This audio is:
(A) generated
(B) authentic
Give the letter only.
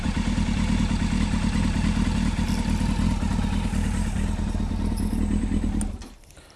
B